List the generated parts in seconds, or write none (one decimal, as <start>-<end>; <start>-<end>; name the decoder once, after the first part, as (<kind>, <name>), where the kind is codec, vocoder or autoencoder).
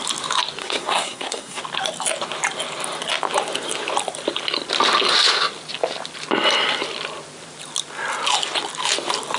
0.6-1.6 (codec, SNAC)